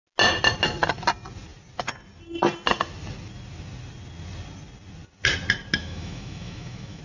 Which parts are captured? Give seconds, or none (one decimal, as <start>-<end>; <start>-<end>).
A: 0.0-5.8